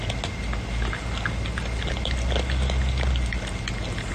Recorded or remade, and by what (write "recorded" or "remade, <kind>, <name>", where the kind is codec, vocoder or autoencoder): recorded